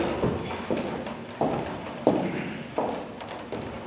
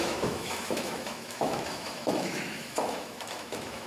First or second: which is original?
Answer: first